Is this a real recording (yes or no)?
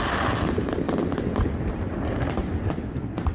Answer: yes